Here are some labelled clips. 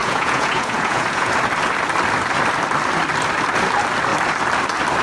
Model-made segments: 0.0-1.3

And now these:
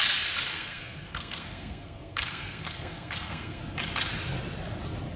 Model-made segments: 0.5-3.6